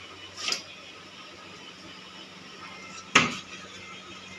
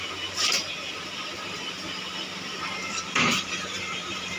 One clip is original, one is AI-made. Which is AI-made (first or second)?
second